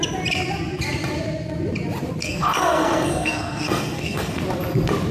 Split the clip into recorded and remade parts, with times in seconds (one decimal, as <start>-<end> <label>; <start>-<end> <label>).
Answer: 0.0-2.2 recorded; 2.2-4.4 remade; 4.4-5.1 recorded